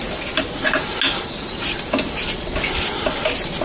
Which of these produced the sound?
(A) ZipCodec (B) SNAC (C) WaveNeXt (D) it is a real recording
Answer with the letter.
D